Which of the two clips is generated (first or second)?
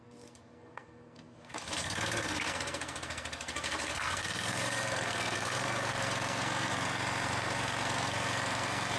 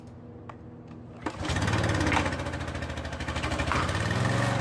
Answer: first